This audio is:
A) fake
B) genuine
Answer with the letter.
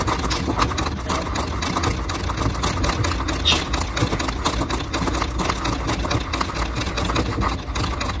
B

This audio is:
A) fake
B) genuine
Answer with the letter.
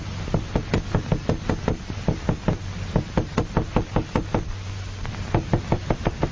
B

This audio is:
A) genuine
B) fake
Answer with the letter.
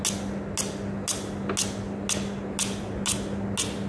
A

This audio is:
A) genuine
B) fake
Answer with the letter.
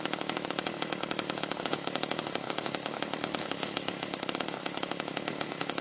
B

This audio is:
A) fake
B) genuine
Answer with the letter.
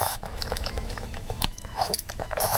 A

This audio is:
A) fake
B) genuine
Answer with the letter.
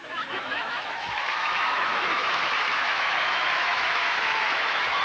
A